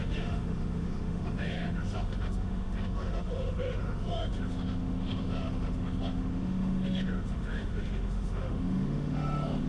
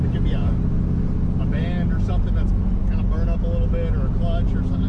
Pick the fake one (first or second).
first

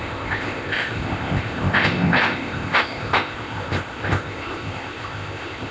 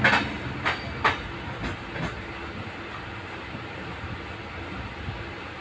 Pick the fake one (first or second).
first